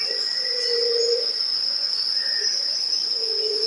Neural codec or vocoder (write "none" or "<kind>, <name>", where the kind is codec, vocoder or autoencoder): vocoder, Vocos